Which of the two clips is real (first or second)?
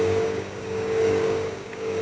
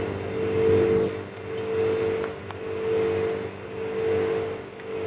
second